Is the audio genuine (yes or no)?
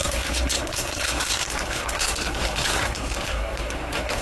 no